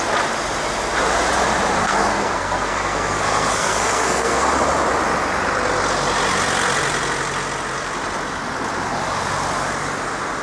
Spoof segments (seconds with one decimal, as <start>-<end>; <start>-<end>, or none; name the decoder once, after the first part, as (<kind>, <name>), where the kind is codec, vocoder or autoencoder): 1.8-4.5 (codec, SNAC)